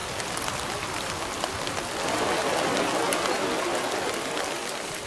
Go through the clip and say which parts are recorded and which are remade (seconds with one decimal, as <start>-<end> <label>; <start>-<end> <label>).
0.0-0.5 recorded; 0.5-2.4 remade; 2.4-4.4 recorded; 4.4-5.1 remade